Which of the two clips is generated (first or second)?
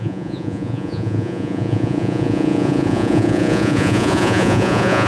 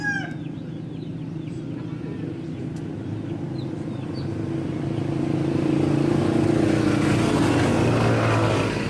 first